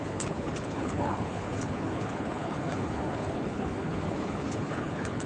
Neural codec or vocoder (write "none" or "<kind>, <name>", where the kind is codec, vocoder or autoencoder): codec, HILCodec